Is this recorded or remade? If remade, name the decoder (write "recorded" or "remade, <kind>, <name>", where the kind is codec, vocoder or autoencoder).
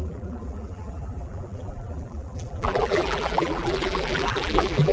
remade, vocoder, BigVGAN v2